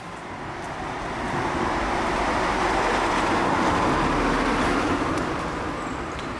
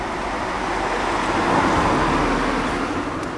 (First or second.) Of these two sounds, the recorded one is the second